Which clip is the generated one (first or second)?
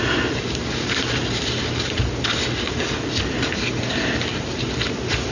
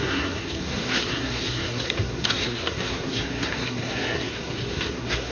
second